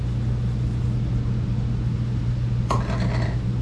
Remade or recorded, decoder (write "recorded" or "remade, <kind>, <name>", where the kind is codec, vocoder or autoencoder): recorded